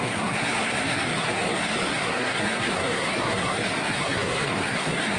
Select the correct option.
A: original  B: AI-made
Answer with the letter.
B